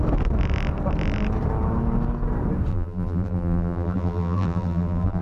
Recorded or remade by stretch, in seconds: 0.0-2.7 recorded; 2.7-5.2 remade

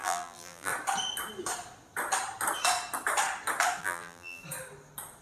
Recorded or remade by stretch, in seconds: 0.0-0.7 remade; 0.7-3.8 recorded; 3.8-4.4 remade; 4.4-5.2 recorded

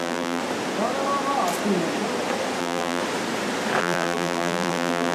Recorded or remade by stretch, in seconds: 0.0-0.4 remade; 0.4-2.6 recorded; 2.6-3.0 remade; 3.0-3.8 recorded; 3.8-5.1 remade